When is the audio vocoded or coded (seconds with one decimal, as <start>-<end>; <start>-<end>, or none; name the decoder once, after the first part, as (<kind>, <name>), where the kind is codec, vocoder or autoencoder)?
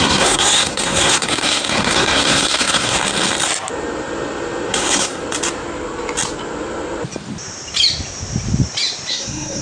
0.0-3.0 (codec, SNAC); 4.7-5.2; 9.1-9.6